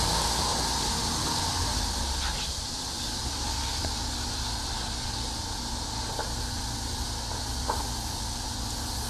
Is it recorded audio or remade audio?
recorded